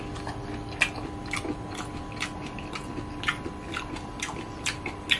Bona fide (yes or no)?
yes